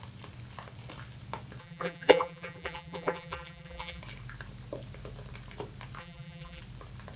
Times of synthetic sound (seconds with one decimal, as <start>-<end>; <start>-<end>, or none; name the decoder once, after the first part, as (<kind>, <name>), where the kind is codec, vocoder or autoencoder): 1.6-4.0 (vocoder, BigVGAN v2); 6.0-6.6